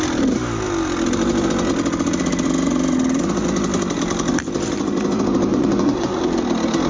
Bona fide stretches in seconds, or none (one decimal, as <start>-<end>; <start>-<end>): 0.0-5.5; 6.2-6.9